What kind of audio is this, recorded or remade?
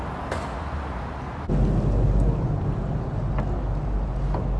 recorded